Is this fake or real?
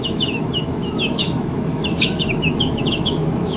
fake